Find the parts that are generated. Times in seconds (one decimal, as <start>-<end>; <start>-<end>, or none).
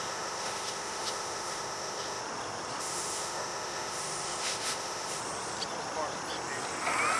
0.0-2.2; 2.8-5.2